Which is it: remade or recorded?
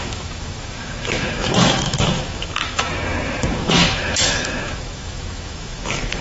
remade